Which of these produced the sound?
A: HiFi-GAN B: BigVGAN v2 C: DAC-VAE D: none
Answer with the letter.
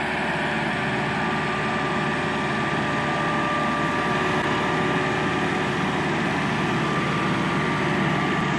D